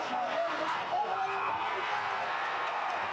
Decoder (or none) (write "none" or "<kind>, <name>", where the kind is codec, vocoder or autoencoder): codec, SNAC